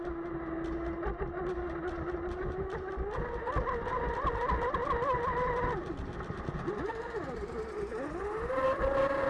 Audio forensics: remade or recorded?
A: recorded